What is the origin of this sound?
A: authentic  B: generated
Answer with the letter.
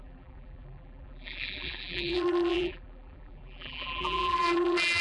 B